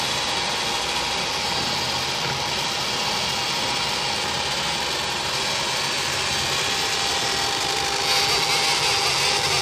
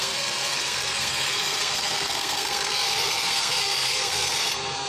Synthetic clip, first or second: second